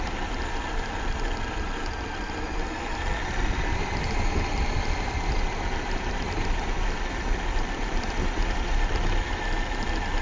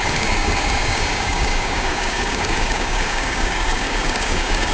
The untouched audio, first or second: first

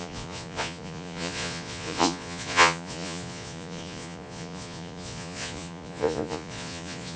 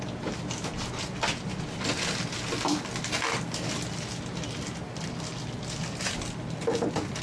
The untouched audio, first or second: second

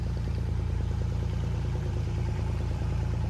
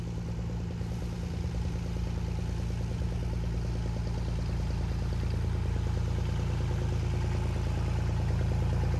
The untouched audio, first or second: second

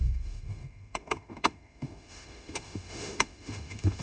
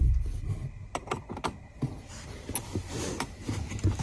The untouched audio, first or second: second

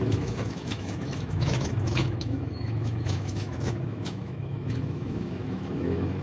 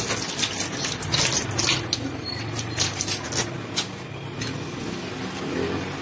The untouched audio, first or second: second